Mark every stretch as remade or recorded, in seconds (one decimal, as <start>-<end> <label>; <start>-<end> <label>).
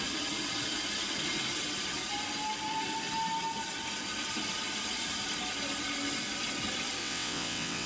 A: 0.0-7.0 recorded; 7.0-7.9 remade